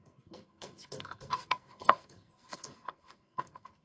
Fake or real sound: fake